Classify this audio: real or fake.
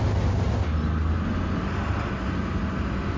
real